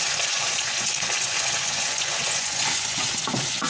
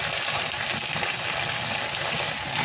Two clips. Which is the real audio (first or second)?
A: second